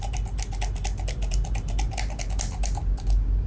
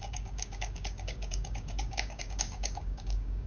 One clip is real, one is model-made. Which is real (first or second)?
first